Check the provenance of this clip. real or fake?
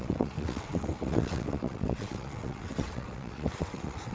fake